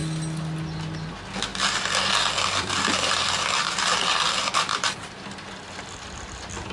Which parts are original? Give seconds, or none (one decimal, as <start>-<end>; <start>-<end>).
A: 0.0-1.5; 5.5-6.7